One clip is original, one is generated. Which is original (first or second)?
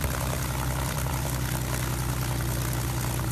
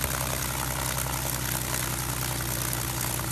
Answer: second